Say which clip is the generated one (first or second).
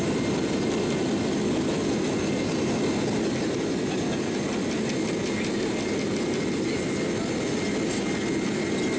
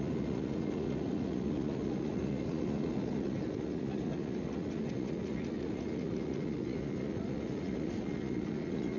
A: second